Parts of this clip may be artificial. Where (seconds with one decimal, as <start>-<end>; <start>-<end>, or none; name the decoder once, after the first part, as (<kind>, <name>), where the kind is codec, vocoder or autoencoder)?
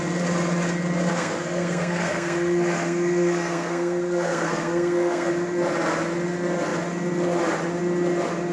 1.1-5.3 (codec, SNAC)